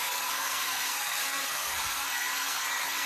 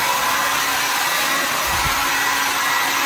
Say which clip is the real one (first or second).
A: second